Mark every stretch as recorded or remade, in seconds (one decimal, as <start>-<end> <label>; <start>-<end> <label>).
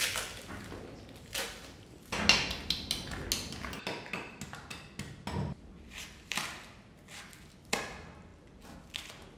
0.0-9.4 recorded